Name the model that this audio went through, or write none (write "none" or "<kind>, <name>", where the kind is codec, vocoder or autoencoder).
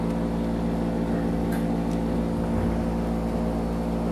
none